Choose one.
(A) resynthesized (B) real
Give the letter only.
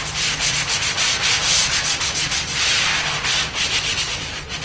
B